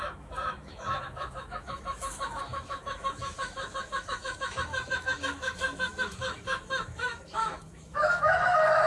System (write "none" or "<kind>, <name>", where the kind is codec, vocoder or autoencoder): autoencoder, DAC-VAE